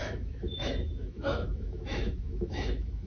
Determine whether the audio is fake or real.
fake